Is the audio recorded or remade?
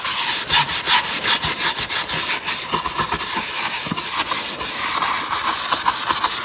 recorded